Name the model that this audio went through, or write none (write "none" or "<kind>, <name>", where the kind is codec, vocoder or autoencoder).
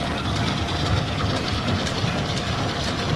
none